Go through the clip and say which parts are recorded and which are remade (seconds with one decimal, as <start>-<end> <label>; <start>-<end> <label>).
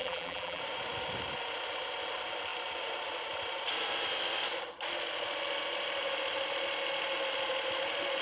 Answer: 0.0-0.6 remade; 0.6-8.2 recorded